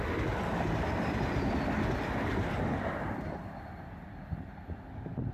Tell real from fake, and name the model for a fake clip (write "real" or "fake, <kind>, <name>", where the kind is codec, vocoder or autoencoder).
real